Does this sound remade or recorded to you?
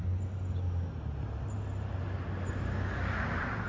recorded